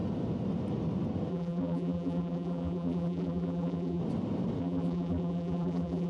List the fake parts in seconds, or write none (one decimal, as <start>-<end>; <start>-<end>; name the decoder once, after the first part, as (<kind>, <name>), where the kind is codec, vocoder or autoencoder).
1.3-4.0 (vocoder, BigVGAN v2); 4.6-6.1